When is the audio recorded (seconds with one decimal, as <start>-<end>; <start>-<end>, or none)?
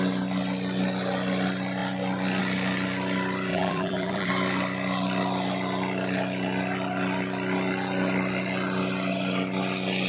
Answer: 0.0-3.5; 4.3-10.1